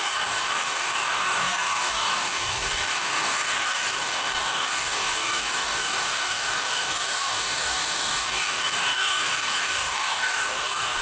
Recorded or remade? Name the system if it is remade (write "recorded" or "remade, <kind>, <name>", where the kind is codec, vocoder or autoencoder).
remade, codec, DAC